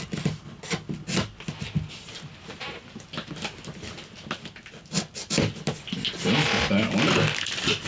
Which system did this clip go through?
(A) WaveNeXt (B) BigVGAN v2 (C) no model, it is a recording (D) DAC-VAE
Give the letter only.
C